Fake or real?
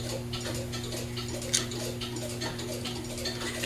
real